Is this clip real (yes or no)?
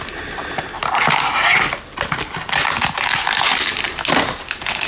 yes